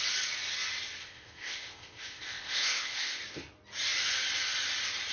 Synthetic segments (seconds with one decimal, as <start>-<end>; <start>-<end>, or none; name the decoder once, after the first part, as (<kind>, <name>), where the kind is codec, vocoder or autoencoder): 1.0-3.2 (codec, ZipCodec)